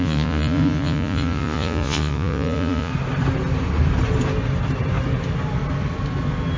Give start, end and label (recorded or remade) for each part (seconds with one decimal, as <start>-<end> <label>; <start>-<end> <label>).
0.0-2.9 remade; 2.9-6.6 recorded